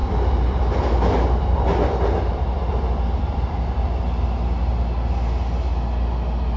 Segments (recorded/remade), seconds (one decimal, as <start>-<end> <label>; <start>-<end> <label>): 0.0-4.0 remade; 4.0-6.6 recorded